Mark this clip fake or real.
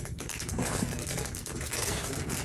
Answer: fake